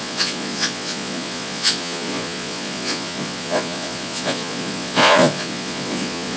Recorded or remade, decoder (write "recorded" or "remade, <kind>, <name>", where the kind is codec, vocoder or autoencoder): remade, vocoder, Vocos